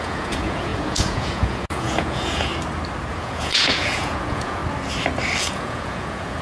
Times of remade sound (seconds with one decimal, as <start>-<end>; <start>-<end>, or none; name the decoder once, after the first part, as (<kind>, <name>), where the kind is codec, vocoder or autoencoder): 0.0-2.5 (vocoder, Vocos); 3.1-4.6; 5.4-6.4